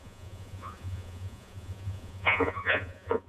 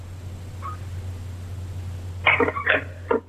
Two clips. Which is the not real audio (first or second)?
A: first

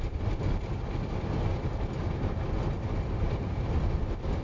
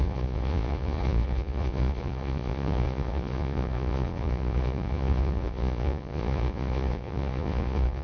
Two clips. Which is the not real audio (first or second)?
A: second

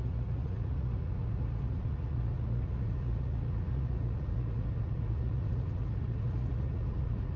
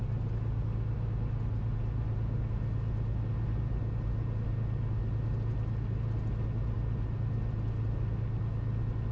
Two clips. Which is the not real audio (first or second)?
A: first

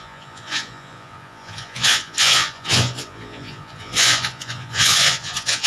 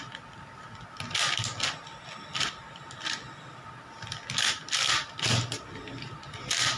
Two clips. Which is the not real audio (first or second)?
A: first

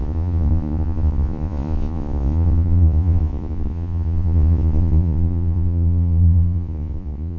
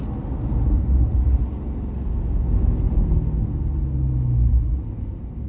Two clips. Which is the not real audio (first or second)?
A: first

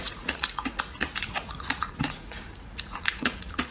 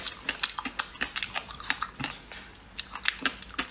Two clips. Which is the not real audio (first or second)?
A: first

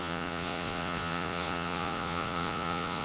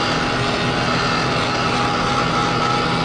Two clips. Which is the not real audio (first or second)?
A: first